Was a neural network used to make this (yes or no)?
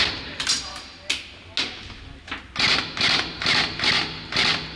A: no